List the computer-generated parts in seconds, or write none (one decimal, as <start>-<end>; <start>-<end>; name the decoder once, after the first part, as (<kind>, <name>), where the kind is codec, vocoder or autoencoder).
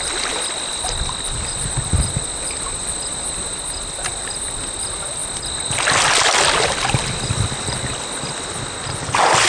none